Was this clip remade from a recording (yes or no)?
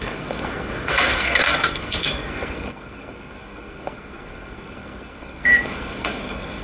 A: yes